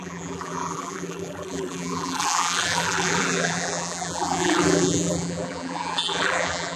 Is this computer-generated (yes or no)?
yes